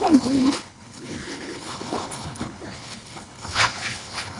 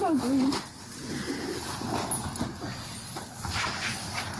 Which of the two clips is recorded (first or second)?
second